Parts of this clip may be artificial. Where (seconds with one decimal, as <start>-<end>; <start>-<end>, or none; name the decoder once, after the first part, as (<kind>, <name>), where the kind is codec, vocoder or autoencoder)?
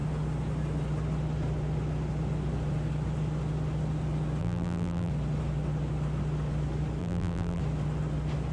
4.4-5.1 (vocoder, BigVGAN v2); 7.0-7.6